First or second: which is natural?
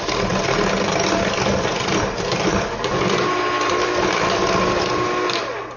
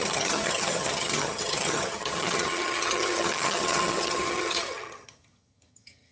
first